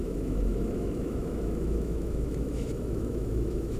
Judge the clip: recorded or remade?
remade